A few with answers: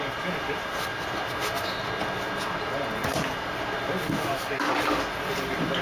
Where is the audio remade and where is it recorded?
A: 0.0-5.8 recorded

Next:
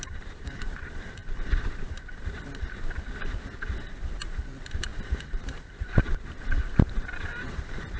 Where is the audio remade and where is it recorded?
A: 0.0-1.2 remade; 1.2-4.2 recorded; 4.2-8.0 remade

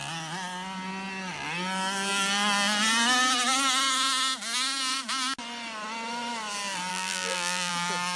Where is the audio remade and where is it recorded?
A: 0.0-6.9 recorded; 6.9-7.7 remade; 7.7-8.2 recorded

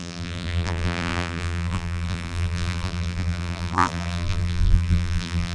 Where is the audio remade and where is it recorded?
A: 0.0-5.5 remade

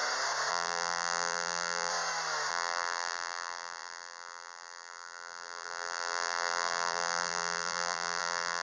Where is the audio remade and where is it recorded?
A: 0.0-0.5 recorded; 0.5-1.9 remade; 1.9-2.5 recorded; 2.5-8.6 remade

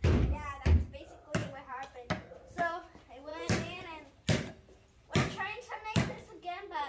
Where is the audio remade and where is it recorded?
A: 0.0-1.4 recorded; 1.4-2.1 remade; 2.1-3.3 recorded; 3.3-4.5 remade; 4.5-6.9 recorded

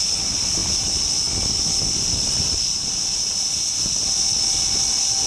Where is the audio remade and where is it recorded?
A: 0.0-5.3 recorded